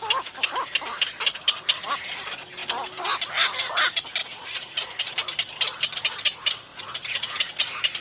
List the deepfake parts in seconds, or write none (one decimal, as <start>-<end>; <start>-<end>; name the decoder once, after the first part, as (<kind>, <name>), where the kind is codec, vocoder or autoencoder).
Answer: 4.2-5.1 (vocoder, Vocos); 6.7-7.5